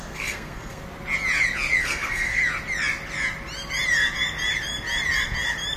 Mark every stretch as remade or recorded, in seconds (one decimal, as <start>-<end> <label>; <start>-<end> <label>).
0.0-0.8 remade; 0.8-1.8 recorded; 1.8-2.4 remade; 2.4-5.8 recorded